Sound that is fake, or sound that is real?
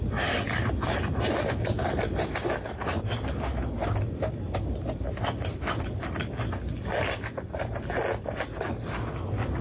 real